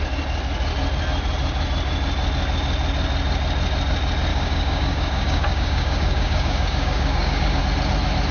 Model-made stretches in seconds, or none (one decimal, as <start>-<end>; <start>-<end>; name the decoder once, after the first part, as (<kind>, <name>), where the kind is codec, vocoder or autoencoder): 4.3-7.6 (codec, DAC)